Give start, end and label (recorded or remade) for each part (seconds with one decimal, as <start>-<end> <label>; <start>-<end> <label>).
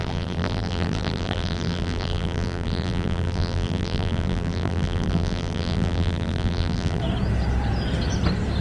0.0-7.0 remade; 7.0-8.6 recorded